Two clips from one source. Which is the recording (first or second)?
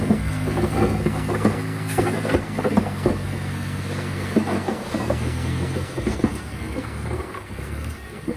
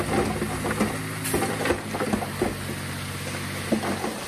second